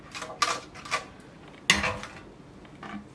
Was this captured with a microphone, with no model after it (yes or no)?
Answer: yes